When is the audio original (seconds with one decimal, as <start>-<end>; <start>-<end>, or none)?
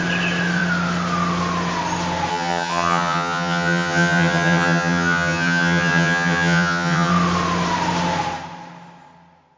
0.0-2.3; 7.1-9.6